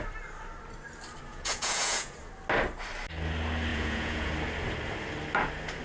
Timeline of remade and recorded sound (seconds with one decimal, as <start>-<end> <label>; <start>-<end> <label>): 0.0-1.3 recorded; 1.3-2.3 remade; 2.3-3.7 recorded; 3.7-4.3 remade; 4.3-5.8 recorded

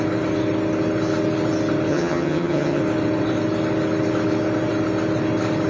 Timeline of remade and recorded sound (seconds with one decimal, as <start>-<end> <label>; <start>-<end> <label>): 0.0-1.9 recorded; 1.9-2.8 remade; 2.8-5.7 recorded

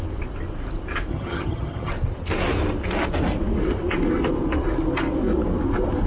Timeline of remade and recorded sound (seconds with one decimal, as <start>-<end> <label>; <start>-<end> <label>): 0.0-1.1 recorded; 1.1-1.9 remade; 1.9-6.1 recorded

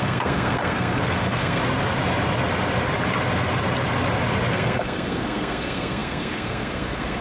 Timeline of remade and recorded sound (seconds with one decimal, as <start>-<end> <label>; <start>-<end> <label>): 0.0-1.6 remade; 1.6-4.5 recorded; 4.5-7.2 remade